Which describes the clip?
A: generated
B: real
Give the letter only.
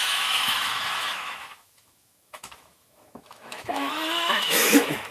A